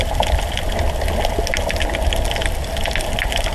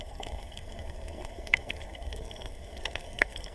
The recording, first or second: first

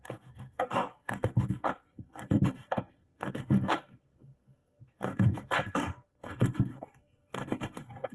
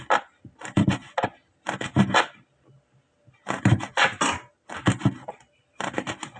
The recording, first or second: second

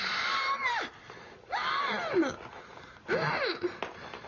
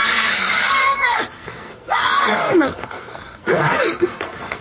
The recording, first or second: first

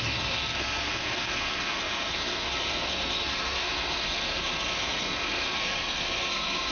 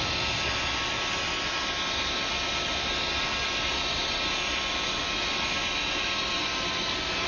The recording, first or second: second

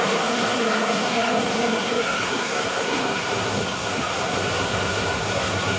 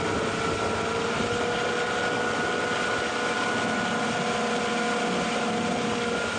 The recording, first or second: second